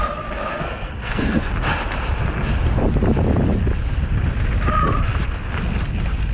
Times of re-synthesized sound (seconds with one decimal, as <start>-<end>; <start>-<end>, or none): 0.5-1.5